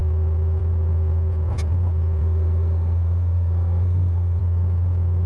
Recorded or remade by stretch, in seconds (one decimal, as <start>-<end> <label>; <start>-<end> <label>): 0.0-2.2 recorded; 2.2-4.4 remade; 4.4-5.3 recorded